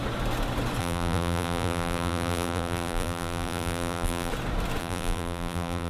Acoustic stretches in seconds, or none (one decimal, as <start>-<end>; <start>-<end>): 0.0-0.8; 4.3-4.8